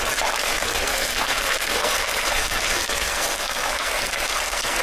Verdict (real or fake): fake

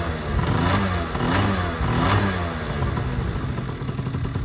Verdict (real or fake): real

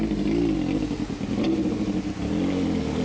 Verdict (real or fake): real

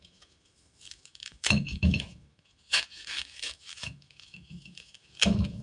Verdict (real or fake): fake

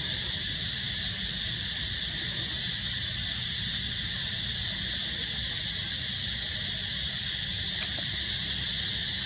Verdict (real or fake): real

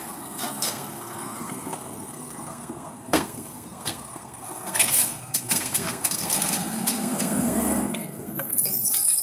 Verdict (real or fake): fake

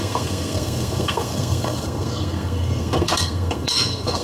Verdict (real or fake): fake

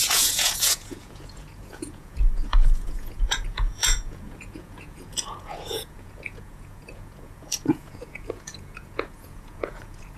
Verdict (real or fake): fake